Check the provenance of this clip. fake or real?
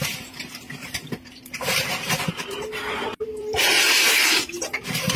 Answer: fake